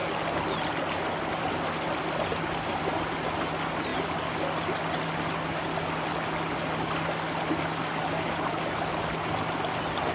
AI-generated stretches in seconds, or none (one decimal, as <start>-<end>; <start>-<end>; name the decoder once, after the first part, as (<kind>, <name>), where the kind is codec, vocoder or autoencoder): 3.9-9.1 (vocoder, BigVGAN v2)